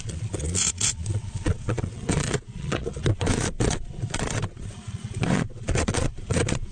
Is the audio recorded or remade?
remade